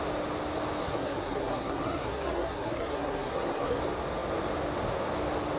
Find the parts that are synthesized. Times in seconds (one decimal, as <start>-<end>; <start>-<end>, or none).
0.8-3.8